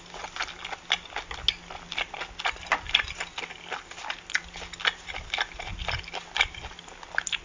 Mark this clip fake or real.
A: real